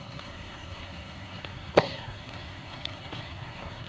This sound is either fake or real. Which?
fake